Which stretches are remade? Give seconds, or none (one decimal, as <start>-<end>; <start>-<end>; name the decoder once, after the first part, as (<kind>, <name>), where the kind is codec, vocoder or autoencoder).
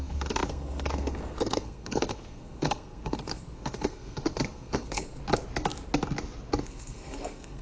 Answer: 0.0-5.2 (codec, SNAC); 6.6-7.6